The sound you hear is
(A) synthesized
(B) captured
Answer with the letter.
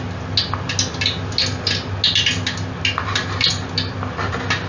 B